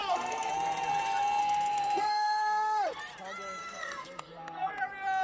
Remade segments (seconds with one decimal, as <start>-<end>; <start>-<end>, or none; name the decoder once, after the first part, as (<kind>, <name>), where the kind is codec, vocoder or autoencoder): 0.0-0.5 (codec, SNAC); 1.4-3.0; 3.6-4.7